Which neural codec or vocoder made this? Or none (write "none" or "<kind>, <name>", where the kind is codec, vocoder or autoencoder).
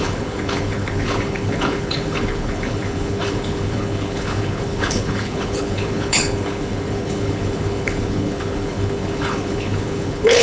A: codec, HILCodec